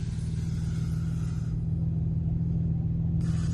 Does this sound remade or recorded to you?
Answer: recorded